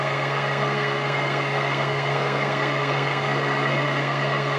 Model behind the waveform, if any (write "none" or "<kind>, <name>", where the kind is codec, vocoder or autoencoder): codec, SNAC